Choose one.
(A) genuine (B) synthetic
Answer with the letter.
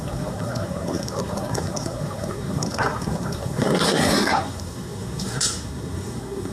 B